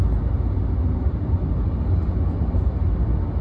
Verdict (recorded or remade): recorded